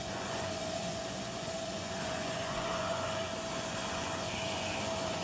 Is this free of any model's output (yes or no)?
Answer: no